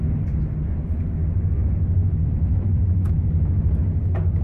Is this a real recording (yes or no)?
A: yes